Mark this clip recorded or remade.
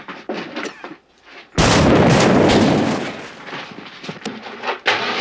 recorded